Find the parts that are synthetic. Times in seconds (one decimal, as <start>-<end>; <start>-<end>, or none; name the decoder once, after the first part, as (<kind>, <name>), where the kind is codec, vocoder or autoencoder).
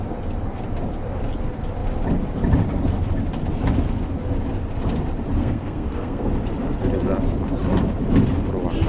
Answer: 5.4-6.3 (codec, SNAC)